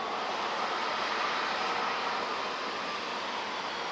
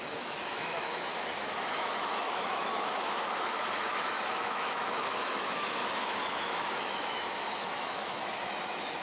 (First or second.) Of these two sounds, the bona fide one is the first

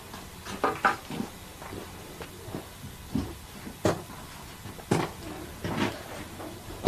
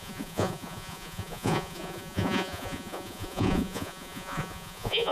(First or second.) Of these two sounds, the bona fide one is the first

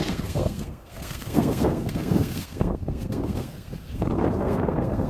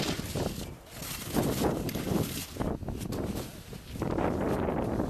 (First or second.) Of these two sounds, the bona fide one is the second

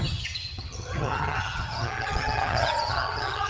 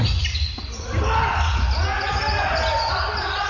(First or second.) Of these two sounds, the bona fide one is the second